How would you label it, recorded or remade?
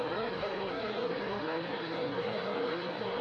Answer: remade